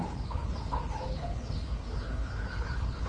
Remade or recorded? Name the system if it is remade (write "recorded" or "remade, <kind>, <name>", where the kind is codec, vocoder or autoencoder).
remade, codec, HILCodec